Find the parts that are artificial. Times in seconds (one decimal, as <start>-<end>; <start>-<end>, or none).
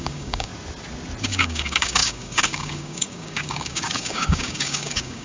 0.0-0.5; 1.2-5.2